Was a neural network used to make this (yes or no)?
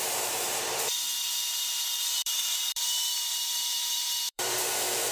yes